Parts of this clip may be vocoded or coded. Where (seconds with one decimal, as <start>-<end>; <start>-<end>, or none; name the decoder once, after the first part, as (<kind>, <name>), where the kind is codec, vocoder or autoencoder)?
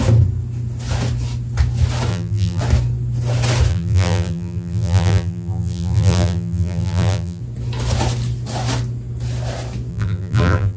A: 2.1-2.6 (vocoder, BigVGAN v2); 3.7-7.4; 9.9-10.8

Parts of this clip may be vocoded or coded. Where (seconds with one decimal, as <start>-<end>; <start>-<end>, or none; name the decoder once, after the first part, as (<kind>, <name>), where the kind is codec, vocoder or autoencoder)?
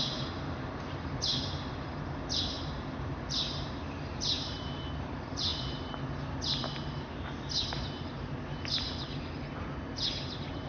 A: 0.0-5.5 (vocoder, BigVGAN v2); 8.5-10.7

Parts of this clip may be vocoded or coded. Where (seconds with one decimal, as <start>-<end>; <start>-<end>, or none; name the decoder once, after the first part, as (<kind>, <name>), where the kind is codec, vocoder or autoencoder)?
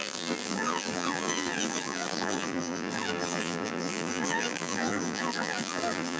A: 0.0-6.2 (vocoder, BigVGAN v2)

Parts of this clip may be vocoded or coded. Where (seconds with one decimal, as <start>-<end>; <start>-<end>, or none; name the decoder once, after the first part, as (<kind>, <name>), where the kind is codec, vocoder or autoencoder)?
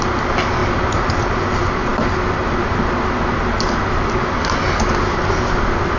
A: 0.6-1.1 (vocoder, BigVGAN v2)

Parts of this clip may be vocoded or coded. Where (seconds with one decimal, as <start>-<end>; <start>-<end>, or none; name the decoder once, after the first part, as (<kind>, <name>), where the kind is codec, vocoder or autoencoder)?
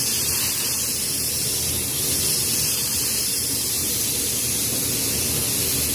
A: 3.3-3.9 (vocoder, BigVGAN v2)